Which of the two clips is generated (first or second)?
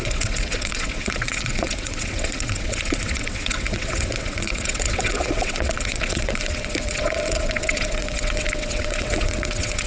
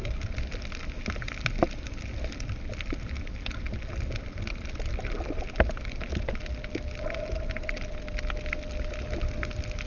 first